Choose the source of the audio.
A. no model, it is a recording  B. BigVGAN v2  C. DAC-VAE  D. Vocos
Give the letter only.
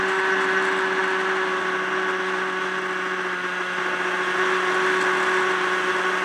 A